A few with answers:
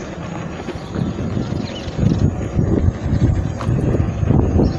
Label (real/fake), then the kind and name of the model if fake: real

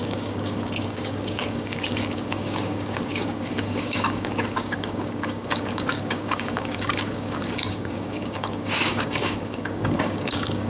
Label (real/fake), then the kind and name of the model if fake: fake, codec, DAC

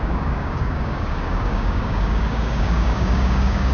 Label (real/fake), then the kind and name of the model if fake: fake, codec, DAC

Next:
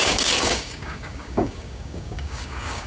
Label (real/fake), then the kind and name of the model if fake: fake, codec, DAC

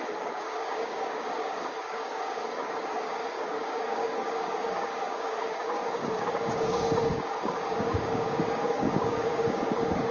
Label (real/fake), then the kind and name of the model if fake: fake, codec, DAC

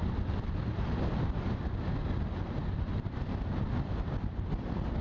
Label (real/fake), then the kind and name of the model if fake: real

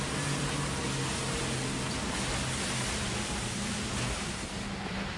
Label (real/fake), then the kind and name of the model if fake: real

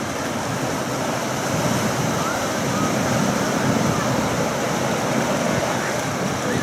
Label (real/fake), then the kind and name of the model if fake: real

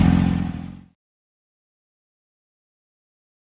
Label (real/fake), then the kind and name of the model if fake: real